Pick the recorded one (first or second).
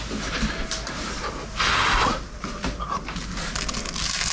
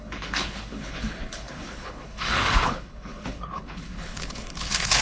first